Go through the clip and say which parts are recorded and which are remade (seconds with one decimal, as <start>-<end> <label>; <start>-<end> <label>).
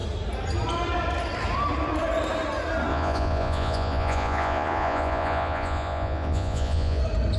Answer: 0.0-2.9 recorded; 2.9-7.0 remade; 7.0-7.4 recorded